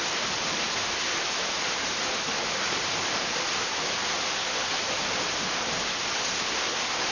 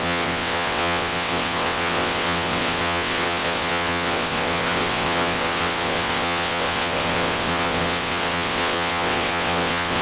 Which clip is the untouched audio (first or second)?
first